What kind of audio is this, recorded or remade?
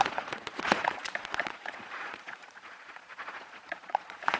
remade